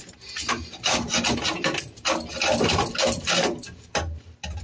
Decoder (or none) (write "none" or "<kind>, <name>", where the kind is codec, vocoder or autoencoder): none